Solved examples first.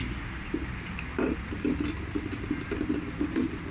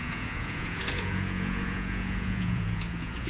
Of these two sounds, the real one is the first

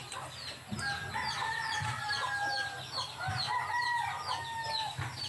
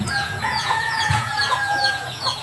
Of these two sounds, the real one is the first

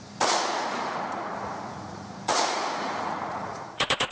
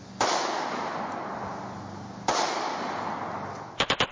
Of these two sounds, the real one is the second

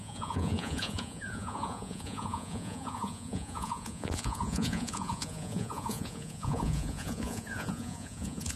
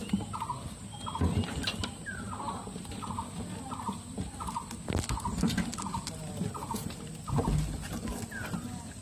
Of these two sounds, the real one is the second